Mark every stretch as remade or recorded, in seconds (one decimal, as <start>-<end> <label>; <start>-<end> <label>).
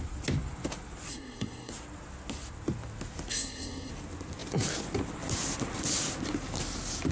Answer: 0.0-1.1 recorded; 1.1-1.7 remade; 1.7-3.3 recorded; 3.3-3.9 remade; 3.9-7.1 recorded